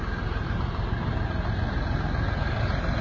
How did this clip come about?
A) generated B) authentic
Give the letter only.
B